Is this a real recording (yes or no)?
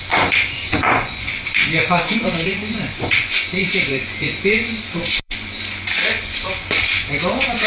no